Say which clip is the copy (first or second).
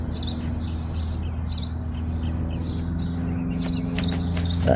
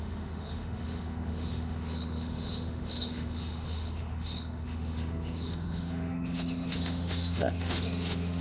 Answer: second